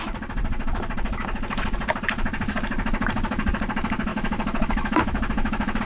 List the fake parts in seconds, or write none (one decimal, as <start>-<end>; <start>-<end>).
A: 4.1-5.8